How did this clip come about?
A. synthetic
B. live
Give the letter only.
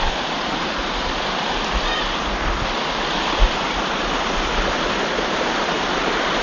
B